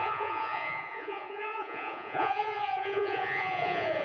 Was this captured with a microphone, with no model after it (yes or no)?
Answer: no